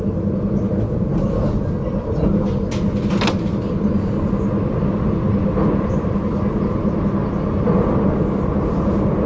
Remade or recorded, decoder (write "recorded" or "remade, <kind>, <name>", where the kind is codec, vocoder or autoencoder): recorded